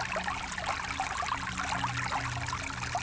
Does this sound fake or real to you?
real